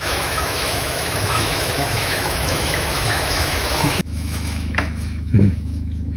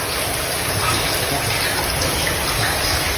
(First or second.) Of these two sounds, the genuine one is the second